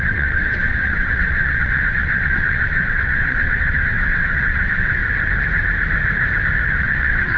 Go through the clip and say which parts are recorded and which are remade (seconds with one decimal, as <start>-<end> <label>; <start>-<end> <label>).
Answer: 0.0-5.0 remade; 5.0-6.8 recorded; 6.8-7.4 remade